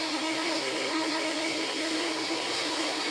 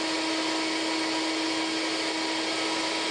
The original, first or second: second